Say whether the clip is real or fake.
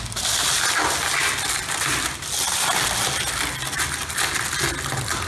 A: real